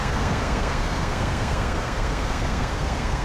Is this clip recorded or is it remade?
remade